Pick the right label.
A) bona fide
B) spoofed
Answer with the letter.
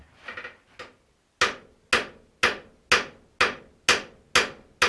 A